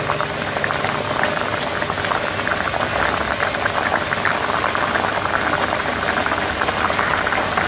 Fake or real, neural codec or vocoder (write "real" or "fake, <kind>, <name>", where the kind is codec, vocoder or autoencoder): real